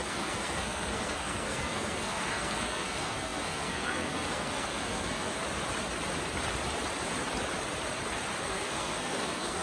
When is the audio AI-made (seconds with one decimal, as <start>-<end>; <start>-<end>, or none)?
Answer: 0.0-5.4; 8.4-9.6